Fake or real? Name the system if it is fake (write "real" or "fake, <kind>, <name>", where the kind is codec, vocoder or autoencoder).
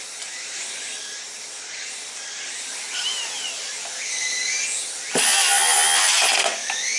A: real